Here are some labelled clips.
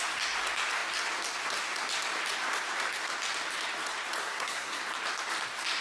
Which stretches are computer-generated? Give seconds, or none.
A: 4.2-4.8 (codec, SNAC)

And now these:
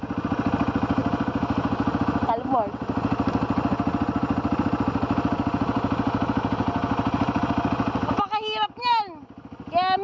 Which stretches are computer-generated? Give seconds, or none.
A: none

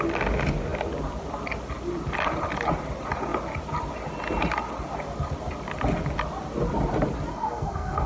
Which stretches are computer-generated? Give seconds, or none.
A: 7.3-8.1 (codec, SNAC)

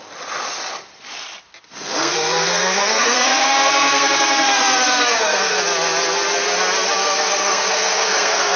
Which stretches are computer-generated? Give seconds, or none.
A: 1.7-5.6 (codec, SNAC); 7.0-8.6

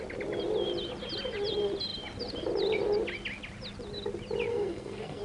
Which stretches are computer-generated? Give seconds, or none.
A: 4.5-5.2 (codec, SNAC)

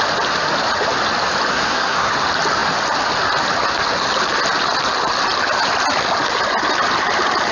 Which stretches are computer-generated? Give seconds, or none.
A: 1.5-2.1 (codec, SNAC)

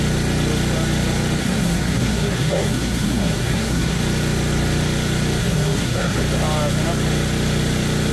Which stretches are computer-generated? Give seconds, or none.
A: 1.4-4.0 (codec, SNAC); 5.4-6.2

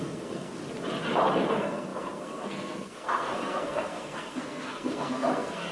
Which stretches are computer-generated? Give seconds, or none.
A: 0.0-0.6 (codec, SNAC); 1.5-5.7